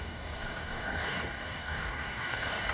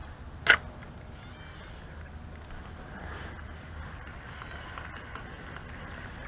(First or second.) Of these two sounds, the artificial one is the first